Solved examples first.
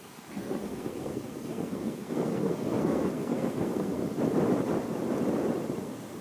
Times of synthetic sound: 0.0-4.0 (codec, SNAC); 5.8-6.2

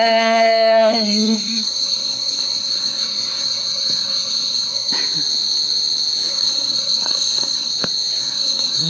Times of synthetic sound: 0.0-4.9 (codec, SNAC); 6.3-7.7; 8.2-8.9

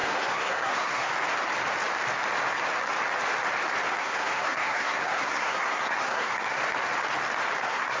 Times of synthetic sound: 0.0-1.1 (codec, SNAC); 4.0-6.6; 7.6-8.0

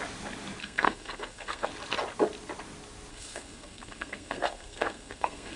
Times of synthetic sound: 0.6-1.7 (codec, SNAC); 3.1-5.6

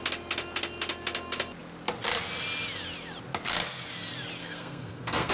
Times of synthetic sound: 4.4-5.3 (codec, SNAC)

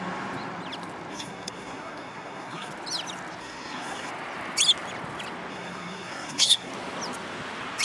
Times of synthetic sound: 1.1-2.7 (codec, SNAC); 3.4-4.1; 5.5-6.7

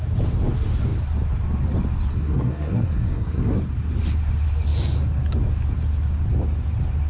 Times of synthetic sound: 2.1-3.6 (codec, SNAC)

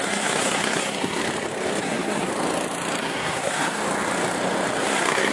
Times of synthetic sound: 0.0-1.2 (codec, SNAC); 1.8-2.3; 3.0-3.8; 4.8-5.3